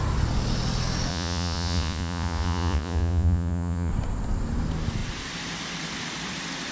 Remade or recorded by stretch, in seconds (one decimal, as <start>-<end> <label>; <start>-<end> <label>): 0.0-1.1 recorded; 1.1-3.9 remade; 3.9-6.7 recorded